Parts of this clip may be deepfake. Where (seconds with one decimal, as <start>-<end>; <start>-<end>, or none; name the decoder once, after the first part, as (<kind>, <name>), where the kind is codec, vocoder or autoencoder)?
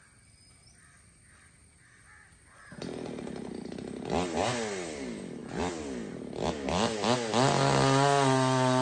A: none